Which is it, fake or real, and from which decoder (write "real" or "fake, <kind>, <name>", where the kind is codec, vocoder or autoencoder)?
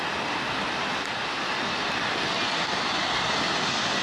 real